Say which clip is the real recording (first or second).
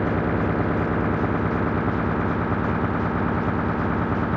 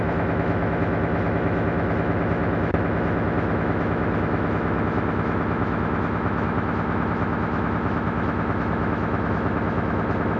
first